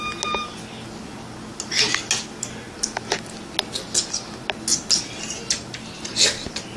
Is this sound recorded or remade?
recorded